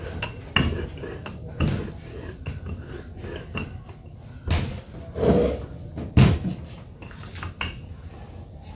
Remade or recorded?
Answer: recorded